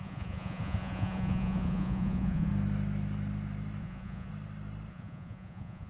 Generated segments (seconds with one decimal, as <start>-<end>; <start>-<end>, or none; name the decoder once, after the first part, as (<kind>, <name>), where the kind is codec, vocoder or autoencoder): 0.0-2.5 (vocoder, Vocos); 3.8-4.3; 4.9-5.9